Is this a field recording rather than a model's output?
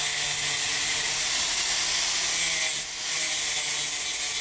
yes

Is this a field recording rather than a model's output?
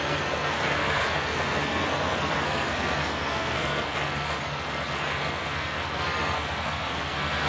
no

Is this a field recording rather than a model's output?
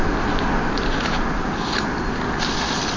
yes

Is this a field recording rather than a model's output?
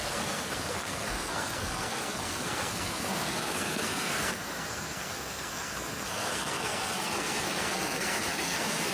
no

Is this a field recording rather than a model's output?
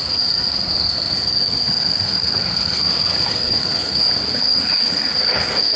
no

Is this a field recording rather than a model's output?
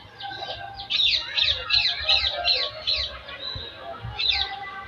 yes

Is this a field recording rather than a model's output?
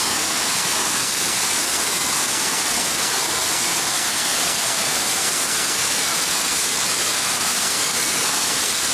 no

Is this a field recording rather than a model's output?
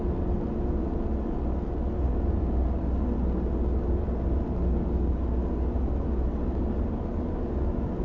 yes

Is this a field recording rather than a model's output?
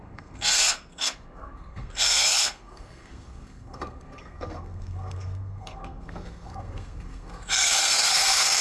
no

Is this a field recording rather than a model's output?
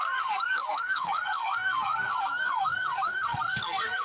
no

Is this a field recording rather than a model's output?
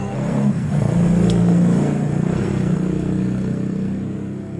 no